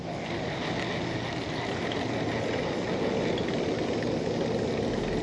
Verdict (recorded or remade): recorded